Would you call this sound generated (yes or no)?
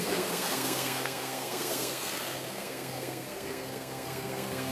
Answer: yes